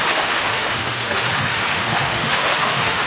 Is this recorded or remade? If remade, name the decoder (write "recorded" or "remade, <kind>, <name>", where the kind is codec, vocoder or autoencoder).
remade, autoencoder, DAC-VAE